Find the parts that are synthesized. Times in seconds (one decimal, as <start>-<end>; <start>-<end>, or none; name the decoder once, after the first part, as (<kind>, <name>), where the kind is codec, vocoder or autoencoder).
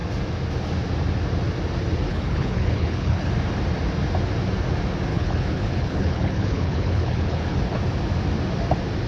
2.1-3.3 (codec, HILCodec); 5.1-7.6